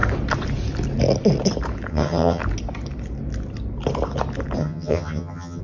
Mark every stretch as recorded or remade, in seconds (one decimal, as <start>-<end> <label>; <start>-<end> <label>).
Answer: 0.0-1.9 recorded; 1.9-2.4 remade; 2.4-4.6 recorded; 4.6-5.6 remade